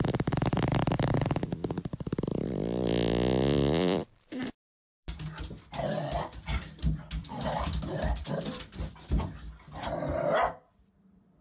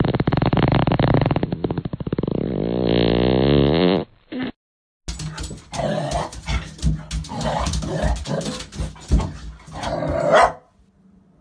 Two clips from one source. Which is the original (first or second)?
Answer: second